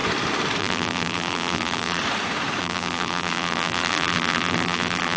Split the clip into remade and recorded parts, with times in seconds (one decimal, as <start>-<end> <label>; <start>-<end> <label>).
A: 0.0-0.6 recorded; 0.6-2.0 remade; 2.0-2.6 recorded; 2.6-5.2 remade